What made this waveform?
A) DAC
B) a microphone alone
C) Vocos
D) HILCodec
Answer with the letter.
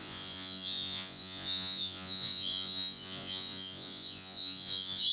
C